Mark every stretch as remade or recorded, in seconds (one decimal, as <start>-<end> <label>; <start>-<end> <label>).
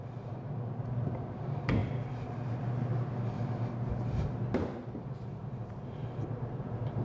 0.0-7.0 recorded